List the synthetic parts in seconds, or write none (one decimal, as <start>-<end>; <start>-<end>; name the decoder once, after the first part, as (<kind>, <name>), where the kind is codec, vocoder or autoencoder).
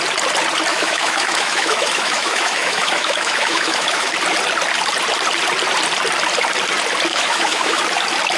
0.7-4.1 (autoencoder, DAC-VAE); 7.1-7.8